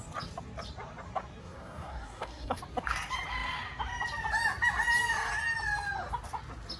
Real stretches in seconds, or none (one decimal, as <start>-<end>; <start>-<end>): 0.0-1.4; 2.6-6.8